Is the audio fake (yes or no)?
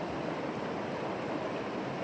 no